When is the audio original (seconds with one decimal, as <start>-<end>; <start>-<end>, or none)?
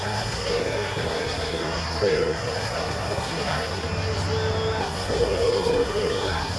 3.9-4.8